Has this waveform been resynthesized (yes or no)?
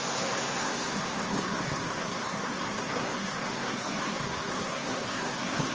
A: yes